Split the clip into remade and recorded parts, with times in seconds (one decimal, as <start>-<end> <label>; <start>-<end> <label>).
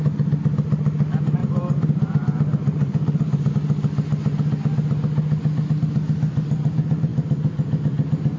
0.0-1.4 recorded; 1.4-3.5 remade; 3.5-8.4 recorded